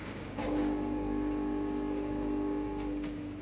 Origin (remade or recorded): remade